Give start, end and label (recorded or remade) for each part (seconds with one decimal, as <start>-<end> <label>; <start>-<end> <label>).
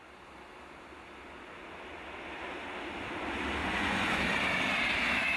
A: 0.0-3.6 recorded; 3.6-4.2 remade; 4.2-5.4 recorded